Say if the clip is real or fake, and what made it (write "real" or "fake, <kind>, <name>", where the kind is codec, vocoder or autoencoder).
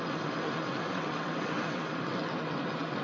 fake, vocoder, WaveNeXt